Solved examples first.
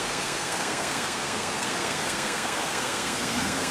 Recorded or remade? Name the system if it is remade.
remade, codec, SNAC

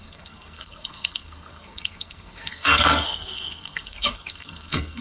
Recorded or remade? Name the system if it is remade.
remade, codec, SNAC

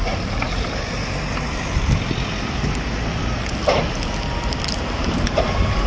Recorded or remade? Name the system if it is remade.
recorded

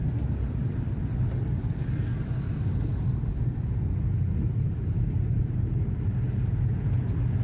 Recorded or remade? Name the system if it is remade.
recorded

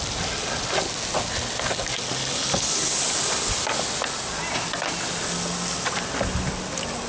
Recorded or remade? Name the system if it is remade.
recorded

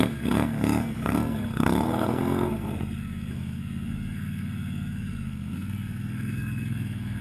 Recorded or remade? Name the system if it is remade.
remade, codec, SNAC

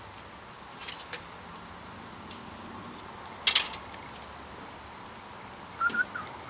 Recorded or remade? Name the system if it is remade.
recorded